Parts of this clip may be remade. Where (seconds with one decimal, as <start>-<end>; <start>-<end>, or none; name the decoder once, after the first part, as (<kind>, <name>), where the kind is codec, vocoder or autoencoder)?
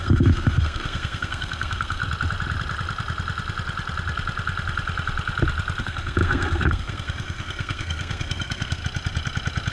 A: 0.0-2.0 (codec, SNAC); 5.8-8.8